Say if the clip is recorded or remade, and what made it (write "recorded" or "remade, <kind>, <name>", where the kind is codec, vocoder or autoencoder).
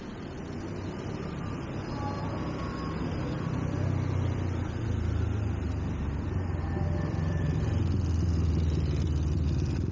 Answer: recorded